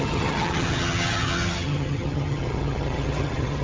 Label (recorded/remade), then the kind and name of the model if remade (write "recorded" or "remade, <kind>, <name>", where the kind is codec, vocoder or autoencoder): remade, vocoder, HiFi-GAN